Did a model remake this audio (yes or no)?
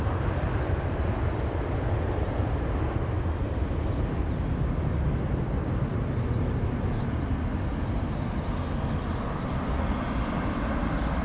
no